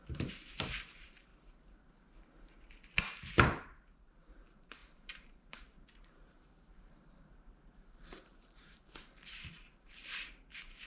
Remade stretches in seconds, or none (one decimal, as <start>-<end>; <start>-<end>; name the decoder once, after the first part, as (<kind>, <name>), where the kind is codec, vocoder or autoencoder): 0.0-1.3 (vocoder, BigVGAN v2); 3.0-10.9